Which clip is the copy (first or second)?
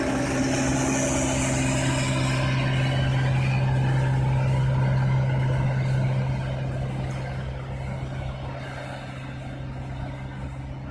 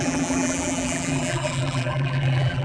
second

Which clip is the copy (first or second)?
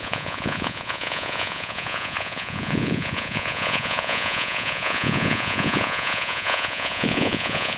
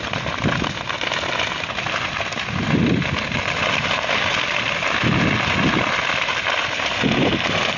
first